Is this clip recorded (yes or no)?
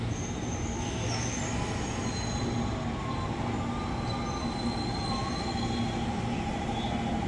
yes